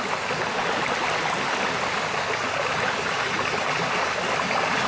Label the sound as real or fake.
real